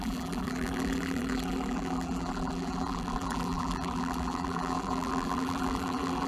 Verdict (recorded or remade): remade